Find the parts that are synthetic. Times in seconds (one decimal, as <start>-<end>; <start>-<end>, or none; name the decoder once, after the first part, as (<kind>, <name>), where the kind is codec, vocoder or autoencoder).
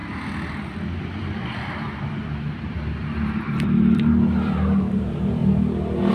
1.0-5.4 (vocoder, BigVGAN v2)